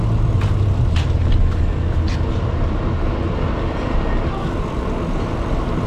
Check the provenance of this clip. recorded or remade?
recorded